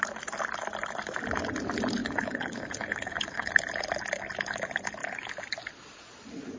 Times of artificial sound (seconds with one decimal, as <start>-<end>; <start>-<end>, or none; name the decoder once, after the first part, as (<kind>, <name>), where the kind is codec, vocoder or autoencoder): 2.0-3.5 (codec, HILCodec)